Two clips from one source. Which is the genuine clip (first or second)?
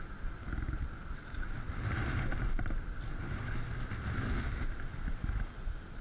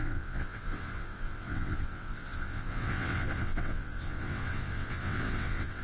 first